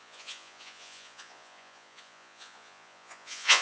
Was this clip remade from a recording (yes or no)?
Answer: yes